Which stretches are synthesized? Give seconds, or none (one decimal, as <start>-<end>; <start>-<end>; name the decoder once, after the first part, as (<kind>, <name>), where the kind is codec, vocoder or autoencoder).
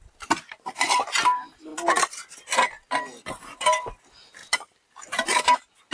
0.0-1.7 (vocoder, BigVGAN v2); 3.3-5.9